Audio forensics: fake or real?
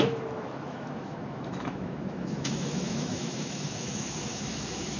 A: fake